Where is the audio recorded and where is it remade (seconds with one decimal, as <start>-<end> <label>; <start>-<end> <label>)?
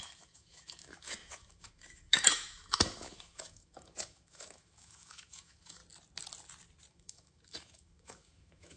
0.0-5.8 remade; 5.8-6.9 recorded; 6.9-8.8 remade